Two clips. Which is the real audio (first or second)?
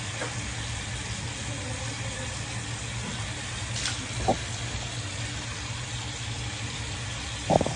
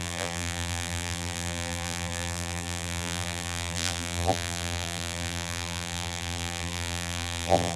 first